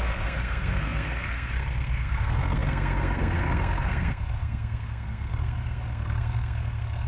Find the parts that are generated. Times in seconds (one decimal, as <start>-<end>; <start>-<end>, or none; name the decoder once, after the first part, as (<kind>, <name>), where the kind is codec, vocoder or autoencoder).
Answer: 0.0-7.1 (codec, SNAC)